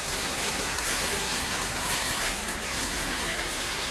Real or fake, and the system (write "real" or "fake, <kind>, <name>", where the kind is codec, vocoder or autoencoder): fake, codec, SNAC